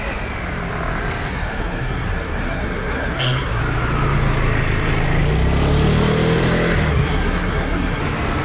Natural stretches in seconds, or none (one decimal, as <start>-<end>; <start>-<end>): 0.0-1.3; 3.6-6.9; 8.0-8.4